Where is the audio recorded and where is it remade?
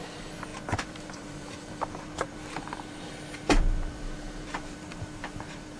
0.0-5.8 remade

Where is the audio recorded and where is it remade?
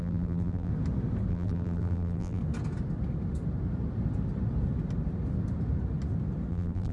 0.0-0.7 remade; 0.7-1.3 recorded; 1.3-2.4 remade; 2.4-6.5 recorded; 6.5-6.9 remade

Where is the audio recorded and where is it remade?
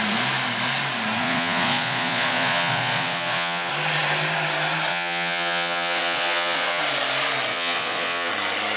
0.0-1.2 recorded; 1.2-3.7 remade; 3.7-4.9 recorded; 4.9-6.8 remade; 6.8-7.5 recorded; 7.5-8.3 remade; 8.3-8.8 recorded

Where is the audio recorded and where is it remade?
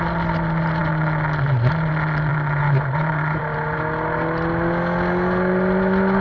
0.0-2.3 recorded; 2.3-3.4 remade; 3.4-6.2 recorded